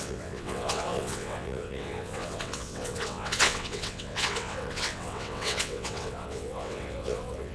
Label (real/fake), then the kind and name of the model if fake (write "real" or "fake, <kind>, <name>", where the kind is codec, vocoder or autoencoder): fake, vocoder, WaveNeXt